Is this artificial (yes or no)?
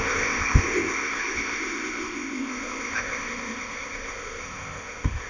yes